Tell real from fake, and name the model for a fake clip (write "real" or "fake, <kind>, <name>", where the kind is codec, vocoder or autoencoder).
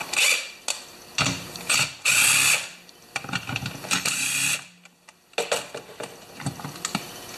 real